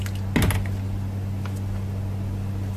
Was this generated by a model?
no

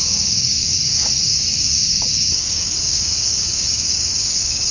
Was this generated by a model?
yes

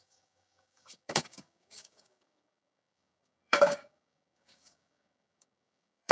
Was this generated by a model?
yes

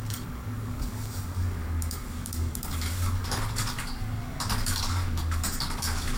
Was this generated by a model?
yes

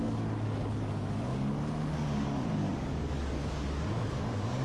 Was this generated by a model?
yes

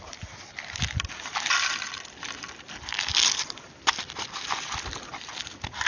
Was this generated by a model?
no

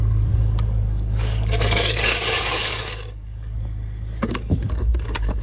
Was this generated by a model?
yes